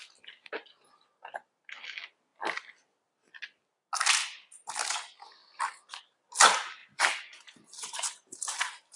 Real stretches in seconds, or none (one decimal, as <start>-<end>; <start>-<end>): 0.0-6.8; 8.6-9.0